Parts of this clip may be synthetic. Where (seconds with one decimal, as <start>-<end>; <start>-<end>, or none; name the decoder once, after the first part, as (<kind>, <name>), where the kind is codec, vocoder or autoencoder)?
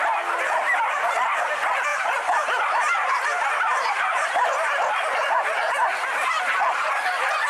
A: 1.9-6.4 (vocoder, BigVGAN v2)